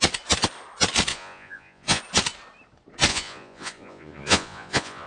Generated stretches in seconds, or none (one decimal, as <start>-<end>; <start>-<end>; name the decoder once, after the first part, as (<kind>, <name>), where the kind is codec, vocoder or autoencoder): 1.1-2.0 (vocoder, Vocos); 3.1-5.1